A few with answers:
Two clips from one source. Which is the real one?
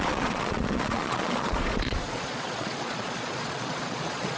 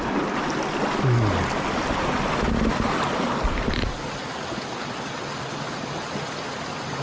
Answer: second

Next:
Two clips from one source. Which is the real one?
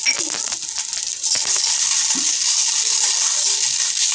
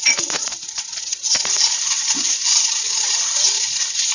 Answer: first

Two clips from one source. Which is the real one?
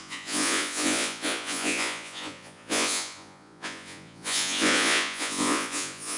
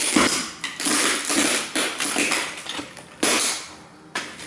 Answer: second